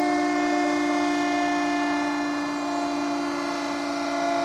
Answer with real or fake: real